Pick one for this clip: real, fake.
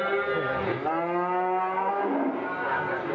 real